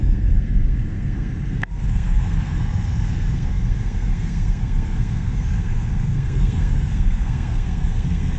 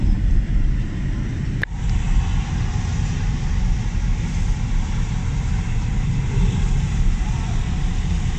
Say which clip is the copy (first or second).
first